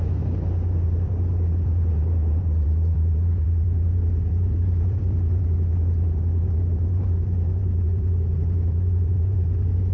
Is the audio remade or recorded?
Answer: remade